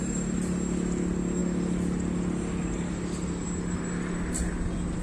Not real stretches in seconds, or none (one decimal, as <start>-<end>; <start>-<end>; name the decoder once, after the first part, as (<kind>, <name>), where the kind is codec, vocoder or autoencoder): none